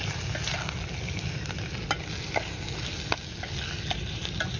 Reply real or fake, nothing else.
real